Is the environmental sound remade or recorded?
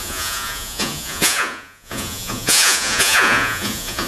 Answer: remade